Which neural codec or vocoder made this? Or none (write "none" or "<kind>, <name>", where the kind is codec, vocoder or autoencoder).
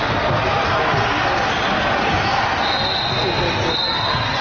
none